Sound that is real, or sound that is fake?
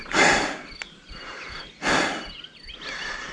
real